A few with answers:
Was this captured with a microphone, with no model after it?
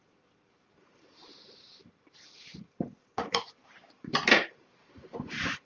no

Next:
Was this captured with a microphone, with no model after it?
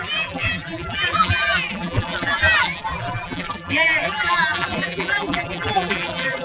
no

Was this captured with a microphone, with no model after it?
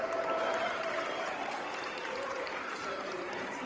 no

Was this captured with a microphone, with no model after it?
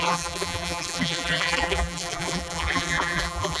no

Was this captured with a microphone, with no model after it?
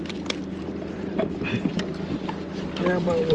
no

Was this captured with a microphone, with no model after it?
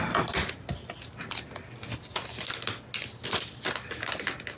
yes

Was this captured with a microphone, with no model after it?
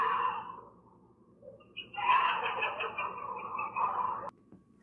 no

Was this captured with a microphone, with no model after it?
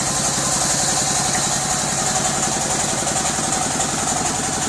yes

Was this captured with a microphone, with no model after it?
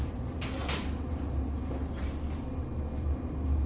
yes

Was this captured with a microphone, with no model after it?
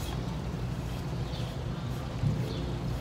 no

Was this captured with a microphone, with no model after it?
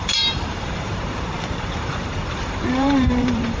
no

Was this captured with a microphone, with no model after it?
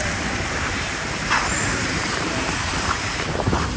no